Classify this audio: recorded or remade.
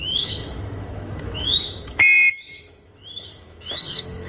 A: remade